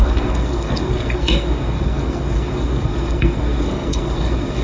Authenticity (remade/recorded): remade